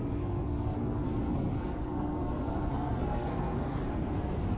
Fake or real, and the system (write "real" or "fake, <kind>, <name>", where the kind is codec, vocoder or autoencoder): fake, codec, SNAC